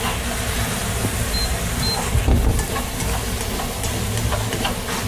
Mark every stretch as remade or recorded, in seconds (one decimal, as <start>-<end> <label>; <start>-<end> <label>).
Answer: 0.0-0.8 recorded; 0.8-1.5 remade; 1.5-5.1 recorded